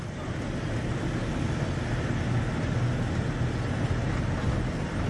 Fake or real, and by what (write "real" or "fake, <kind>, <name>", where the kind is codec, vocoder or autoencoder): real